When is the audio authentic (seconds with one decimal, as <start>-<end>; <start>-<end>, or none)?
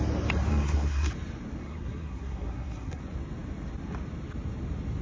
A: 0.0-0.5; 1.1-1.6; 3.0-5.0